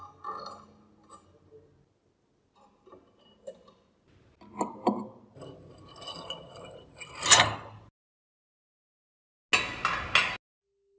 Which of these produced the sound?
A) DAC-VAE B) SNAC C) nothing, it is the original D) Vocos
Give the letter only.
C